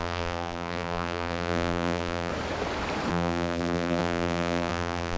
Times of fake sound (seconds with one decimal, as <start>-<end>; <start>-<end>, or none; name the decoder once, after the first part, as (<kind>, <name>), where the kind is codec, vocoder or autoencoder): 0.0-2.3 (vocoder, BigVGAN v2); 3.1-5.2